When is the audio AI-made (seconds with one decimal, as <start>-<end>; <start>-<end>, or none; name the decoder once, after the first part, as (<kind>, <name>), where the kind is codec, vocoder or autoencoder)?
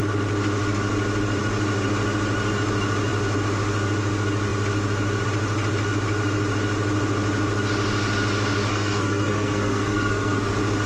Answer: 8.7-10.5 (codec, SNAC)